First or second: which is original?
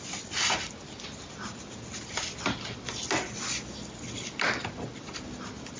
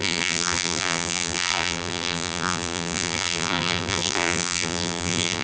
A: first